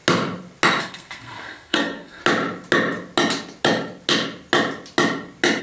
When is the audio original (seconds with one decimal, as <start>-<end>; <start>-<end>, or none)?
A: 0.0-0.8; 2.2-5.6